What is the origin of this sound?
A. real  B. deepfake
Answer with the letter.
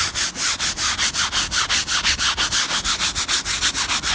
A